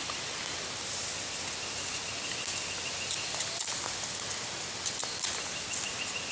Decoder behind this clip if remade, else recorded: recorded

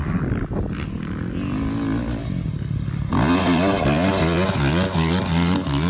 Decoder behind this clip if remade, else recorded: recorded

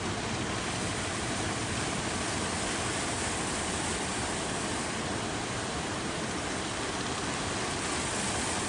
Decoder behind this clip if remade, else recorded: recorded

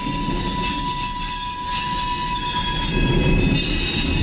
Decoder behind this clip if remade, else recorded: recorded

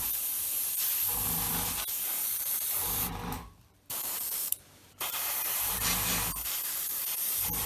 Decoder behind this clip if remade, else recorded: remade, vocoder, BigVGAN v2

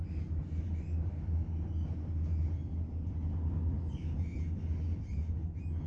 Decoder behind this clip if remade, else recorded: recorded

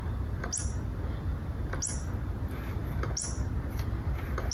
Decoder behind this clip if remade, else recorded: recorded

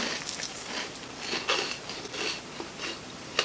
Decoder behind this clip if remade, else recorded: recorded